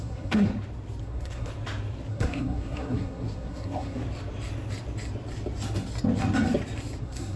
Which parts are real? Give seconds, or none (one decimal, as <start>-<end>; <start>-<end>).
0.5-1.0; 1.5-2.1; 4.0-7.0